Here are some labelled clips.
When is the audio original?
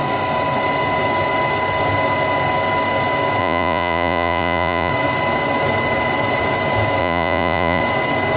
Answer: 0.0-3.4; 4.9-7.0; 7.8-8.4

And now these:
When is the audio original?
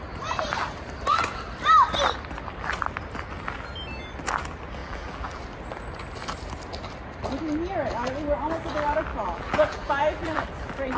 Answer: 0.0-4.8; 5.4-9.1; 10.5-11.0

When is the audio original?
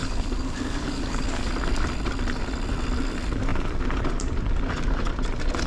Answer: 1.5-5.7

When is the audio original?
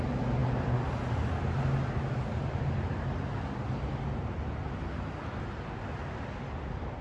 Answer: 0.0-7.0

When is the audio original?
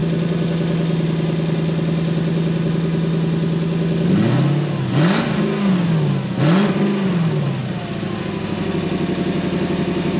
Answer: 0.0-10.2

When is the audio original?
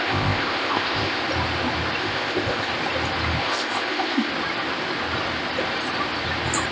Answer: 1.2-2.0; 2.7-3.4; 4.3-6.7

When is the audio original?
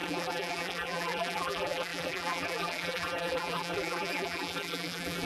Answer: none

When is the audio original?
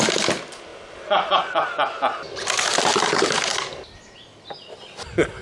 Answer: 0.0-5.4